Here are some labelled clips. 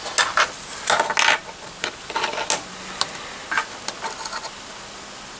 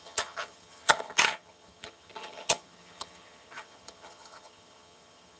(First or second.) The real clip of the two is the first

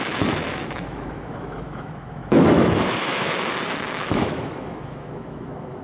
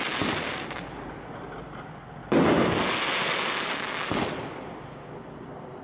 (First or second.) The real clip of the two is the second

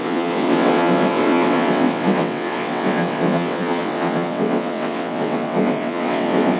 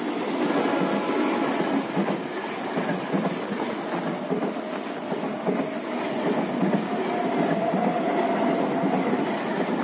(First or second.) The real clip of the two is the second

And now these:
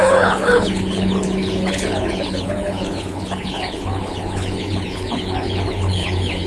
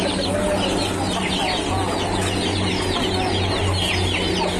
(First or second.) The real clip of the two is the second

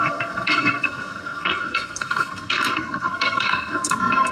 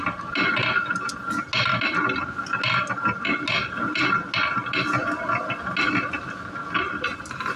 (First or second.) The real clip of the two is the second